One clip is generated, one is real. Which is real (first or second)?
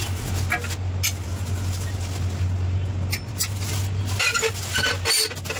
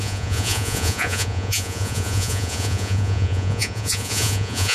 first